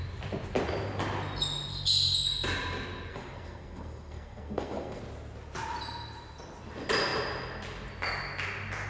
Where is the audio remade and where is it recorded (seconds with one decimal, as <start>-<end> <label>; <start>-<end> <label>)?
0.0-3.1 recorded; 3.1-5.0 remade; 5.0-8.9 recorded